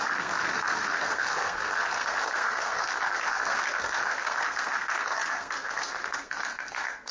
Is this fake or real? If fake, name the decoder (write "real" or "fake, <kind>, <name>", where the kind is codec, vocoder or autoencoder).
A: fake, codec, SNAC